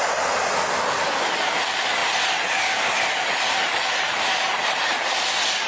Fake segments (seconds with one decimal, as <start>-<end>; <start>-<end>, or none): none